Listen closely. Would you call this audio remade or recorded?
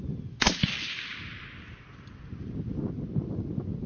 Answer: recorded